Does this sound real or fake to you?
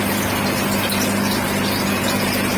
real